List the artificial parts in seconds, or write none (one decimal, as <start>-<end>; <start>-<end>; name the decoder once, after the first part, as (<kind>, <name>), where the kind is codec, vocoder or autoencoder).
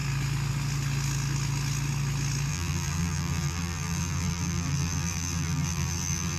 2.5-6.4 (vocoder, BigVGAN v2)